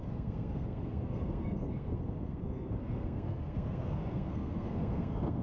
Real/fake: fake